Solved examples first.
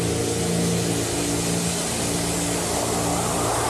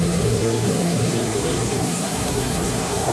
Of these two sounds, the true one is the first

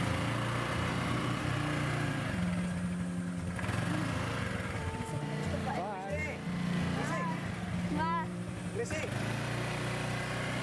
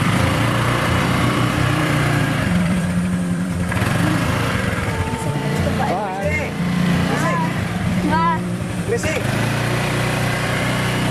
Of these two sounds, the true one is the first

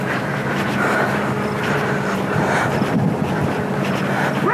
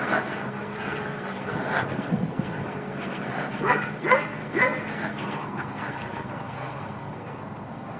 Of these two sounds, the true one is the first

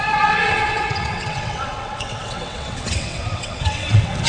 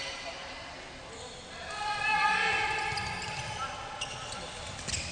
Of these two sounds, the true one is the second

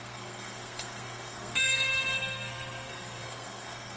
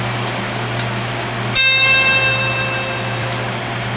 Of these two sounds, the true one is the second